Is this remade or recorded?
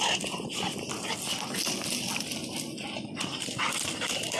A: recorded